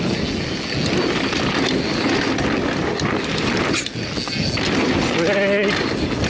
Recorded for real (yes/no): yes